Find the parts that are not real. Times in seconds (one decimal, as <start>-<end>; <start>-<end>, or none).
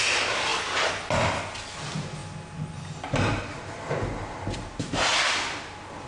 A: none